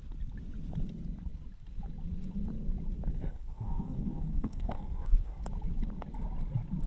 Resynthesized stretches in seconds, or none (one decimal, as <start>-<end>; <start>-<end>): 3.1-5.4